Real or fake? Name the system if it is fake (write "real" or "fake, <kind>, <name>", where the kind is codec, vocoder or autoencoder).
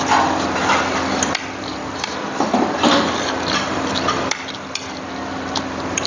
fake, vocoder, BigVGAN v2